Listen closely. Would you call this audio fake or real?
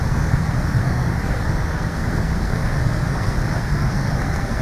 fake